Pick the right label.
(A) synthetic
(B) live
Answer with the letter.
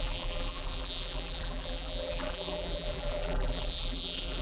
A